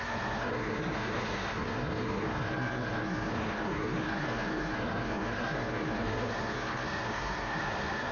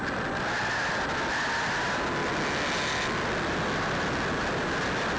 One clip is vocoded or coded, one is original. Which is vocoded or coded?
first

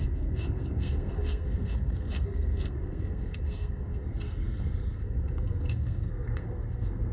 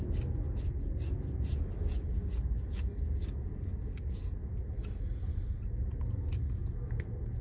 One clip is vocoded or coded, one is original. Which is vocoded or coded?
first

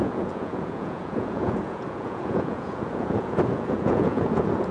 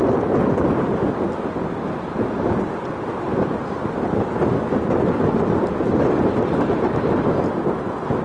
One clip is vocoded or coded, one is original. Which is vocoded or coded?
first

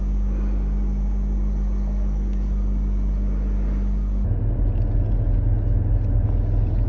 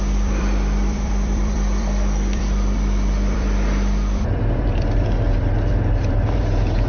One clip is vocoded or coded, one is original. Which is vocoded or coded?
second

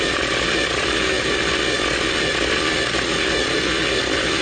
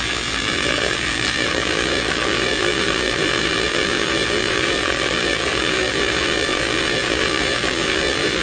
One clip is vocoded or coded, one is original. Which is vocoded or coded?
second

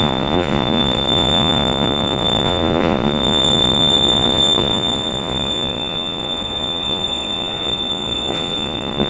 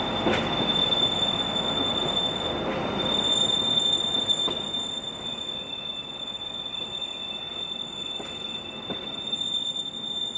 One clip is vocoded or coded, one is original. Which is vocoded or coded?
first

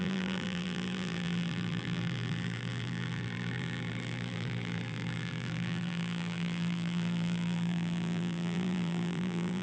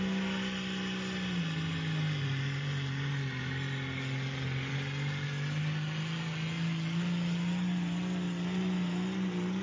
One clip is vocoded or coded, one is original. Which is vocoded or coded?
first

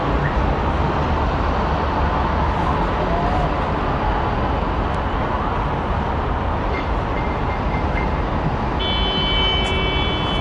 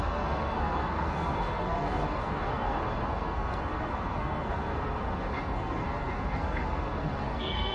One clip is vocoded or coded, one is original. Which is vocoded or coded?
second